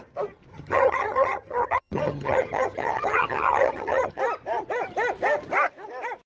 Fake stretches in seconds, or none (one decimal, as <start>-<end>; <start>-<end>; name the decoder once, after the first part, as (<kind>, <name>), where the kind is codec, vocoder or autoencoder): 0.5-4.2 (vocoder, HiFi-GAN)